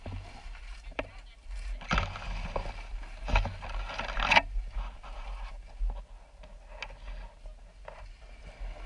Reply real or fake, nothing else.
real